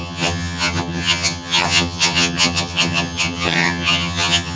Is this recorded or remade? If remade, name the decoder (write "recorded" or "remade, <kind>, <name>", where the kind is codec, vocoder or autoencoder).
remade, vocoder, HiFi-GAN